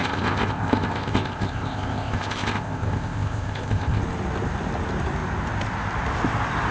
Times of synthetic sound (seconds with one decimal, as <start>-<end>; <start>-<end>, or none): 0.0-4.0